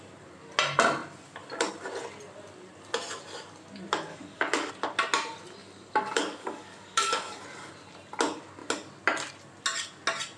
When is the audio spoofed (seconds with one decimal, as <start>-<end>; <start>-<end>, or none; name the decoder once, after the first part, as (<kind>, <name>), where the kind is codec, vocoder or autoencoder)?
4.1-4.7 (codec, DAC); 5.6-7.4